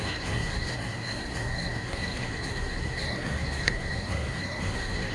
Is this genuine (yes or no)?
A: no